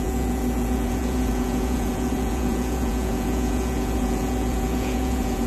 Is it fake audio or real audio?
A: fake